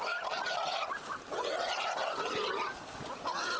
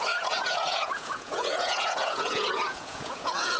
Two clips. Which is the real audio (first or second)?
first